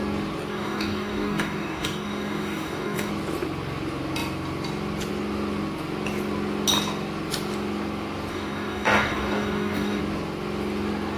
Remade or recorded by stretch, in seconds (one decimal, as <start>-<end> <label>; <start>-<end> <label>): 0.0-0.5 recorded; 0.5-3.1 remade; 3.1-8.3 recorded; 8.3-10.0 remade; 10.0-11.2 recorded